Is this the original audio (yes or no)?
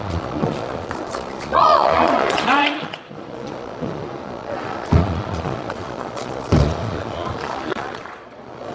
no